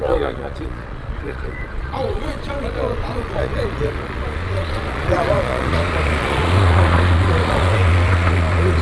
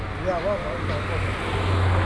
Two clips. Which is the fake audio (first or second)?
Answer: first